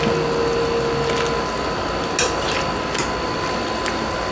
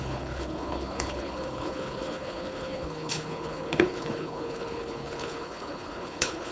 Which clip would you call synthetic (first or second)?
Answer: second